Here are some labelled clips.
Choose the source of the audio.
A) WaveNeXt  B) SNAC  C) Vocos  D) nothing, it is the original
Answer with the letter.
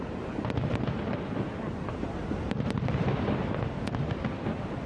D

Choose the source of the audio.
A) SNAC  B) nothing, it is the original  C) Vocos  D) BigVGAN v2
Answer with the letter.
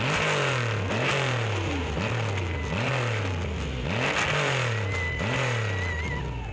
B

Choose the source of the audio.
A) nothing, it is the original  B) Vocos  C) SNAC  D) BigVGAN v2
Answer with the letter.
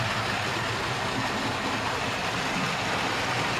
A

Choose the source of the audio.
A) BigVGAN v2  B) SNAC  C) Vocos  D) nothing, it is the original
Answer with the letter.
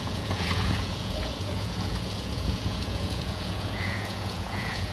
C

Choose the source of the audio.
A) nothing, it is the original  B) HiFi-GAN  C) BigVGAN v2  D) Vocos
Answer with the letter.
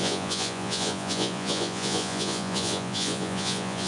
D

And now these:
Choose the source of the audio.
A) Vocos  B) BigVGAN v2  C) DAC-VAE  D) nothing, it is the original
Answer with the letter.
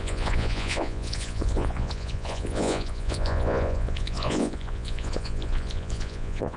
A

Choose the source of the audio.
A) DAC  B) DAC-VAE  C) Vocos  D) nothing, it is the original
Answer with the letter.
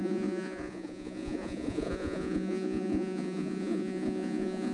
C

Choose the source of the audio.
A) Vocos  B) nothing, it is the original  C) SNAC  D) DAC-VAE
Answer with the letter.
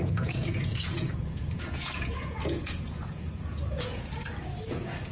A